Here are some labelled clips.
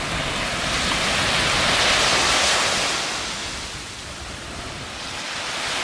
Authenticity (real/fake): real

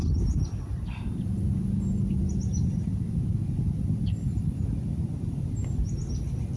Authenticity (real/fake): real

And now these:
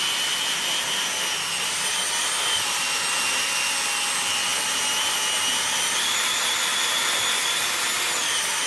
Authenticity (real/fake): real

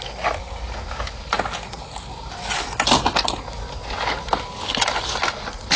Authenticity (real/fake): real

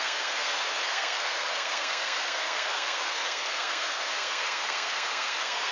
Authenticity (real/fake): fake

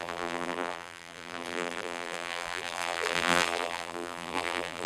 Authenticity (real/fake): fake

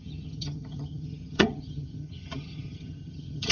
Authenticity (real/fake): fake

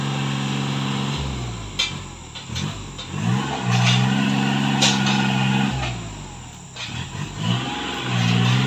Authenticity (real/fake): real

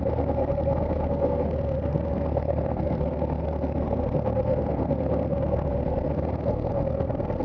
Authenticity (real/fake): fake